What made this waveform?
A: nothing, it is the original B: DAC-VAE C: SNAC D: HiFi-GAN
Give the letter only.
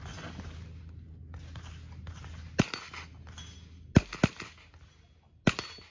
A